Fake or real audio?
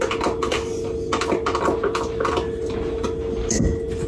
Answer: real